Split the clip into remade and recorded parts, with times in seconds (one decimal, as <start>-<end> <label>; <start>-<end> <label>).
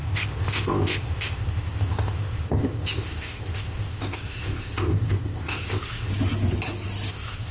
0.0-6.1 remade; 6.1-7.1 recorded; 7.1-7.5 remade